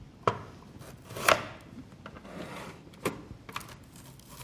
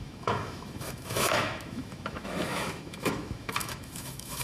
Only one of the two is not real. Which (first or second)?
second